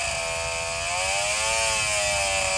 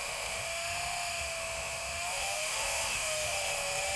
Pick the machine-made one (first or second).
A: second